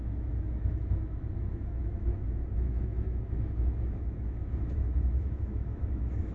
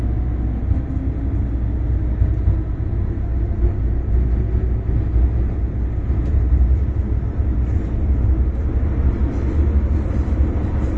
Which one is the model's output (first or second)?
first